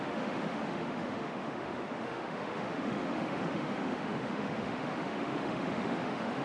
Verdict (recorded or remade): remade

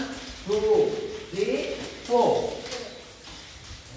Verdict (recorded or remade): recorded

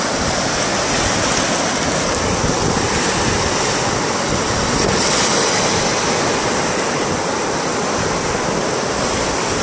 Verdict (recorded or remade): recorded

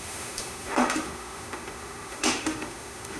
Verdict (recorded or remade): remade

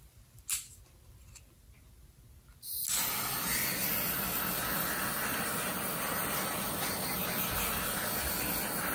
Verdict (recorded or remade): recorded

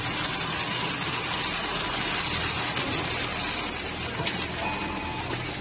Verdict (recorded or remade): recorded